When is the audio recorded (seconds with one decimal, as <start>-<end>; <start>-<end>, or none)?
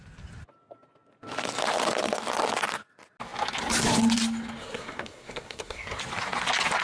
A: 0.0-4.6; 6.0-6.8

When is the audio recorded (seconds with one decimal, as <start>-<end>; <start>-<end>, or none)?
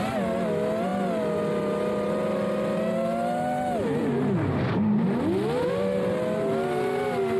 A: 0.0-7.4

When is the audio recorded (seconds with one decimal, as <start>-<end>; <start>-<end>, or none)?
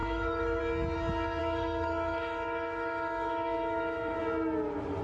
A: 0.6-1.4; 4.2-5.0